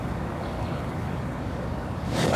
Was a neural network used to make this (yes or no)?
yes